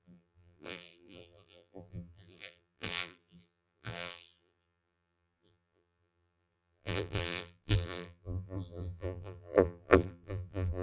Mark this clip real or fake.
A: fake